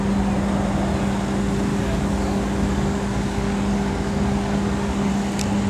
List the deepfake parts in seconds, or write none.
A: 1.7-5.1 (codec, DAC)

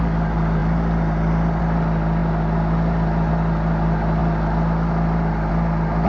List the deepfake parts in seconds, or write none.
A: none

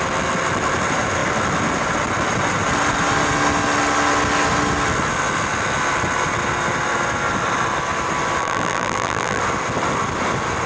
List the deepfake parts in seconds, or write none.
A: 8.4-9.4 (vocoder, BigVGAN v2)

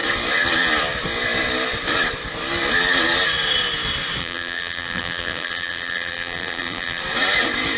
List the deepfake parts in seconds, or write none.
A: 4.2-7.0 (vocoder, BigVGAN v2)

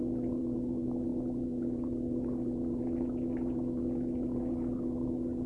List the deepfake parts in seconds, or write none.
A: none

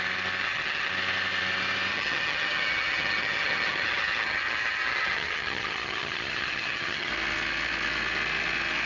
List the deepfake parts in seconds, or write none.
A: 0.4-0.9 (vocoder, HiFi-GAN); 1.9-7.1

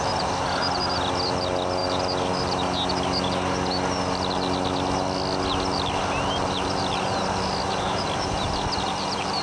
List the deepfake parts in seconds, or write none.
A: none